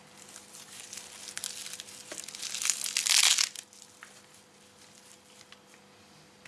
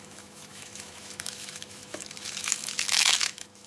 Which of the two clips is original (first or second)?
first